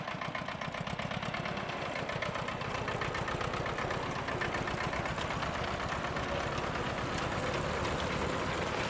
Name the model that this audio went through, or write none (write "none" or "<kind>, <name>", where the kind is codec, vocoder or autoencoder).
none